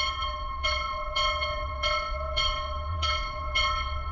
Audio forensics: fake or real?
fake